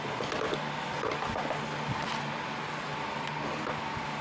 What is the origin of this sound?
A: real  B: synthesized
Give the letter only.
A